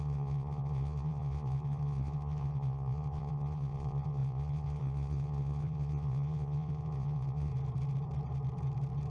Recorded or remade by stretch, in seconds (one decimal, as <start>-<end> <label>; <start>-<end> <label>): 0.0-7.5 remade; 7.5-9.1 recorded